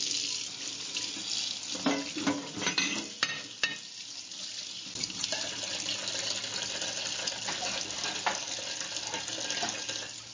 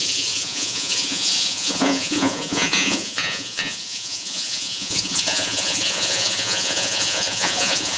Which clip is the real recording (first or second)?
first